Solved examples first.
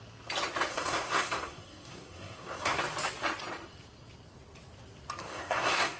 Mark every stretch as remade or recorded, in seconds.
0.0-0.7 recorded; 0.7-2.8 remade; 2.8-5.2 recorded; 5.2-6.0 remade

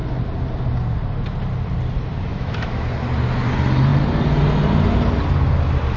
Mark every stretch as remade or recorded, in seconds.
0.0-2.3 recorded; 2.3-2.9 remade; 2.9-6.0 recorded

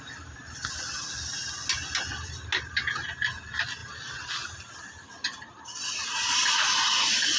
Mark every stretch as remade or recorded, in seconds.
0.0-7.4 recorded

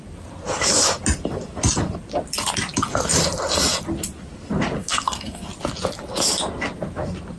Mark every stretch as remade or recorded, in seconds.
0.0-4.8 recorded; 4.8-5.5 remade; 5.5-7.4 recorded

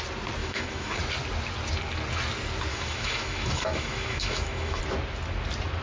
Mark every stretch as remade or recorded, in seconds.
0.0-0.4 recorded; 0.4-1.0 remade; 1.0-2.7 recorded; 2.7-4.8 remade; 4.8-5.8 recorded

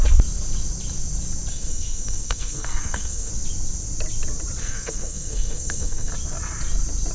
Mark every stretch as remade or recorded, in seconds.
0.0-1.5 recorded; 1.5-3.3 remade; 3.3-4.6 recorded; 4.6-6.1 remade; 6.1-7.1 recorded